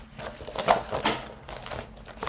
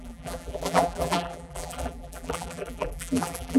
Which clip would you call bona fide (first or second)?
first